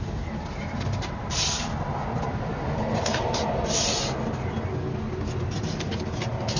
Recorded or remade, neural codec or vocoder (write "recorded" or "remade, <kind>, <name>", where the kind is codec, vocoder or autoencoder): recorded